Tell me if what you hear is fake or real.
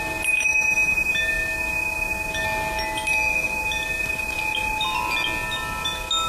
real